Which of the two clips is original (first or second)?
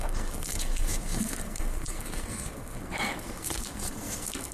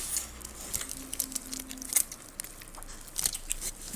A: second